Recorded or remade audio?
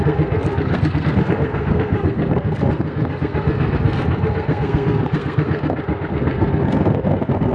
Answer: remade